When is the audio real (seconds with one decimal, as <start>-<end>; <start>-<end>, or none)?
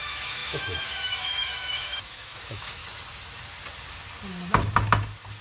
2.8-5.4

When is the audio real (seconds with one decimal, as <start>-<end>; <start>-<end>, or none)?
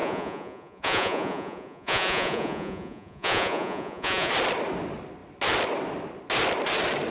4.3-7.1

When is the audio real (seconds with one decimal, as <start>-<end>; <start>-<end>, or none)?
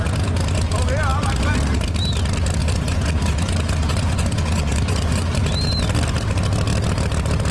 0.0-2.6; 5.4-7.5